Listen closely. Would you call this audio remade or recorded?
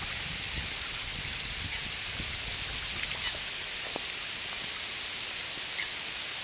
recorded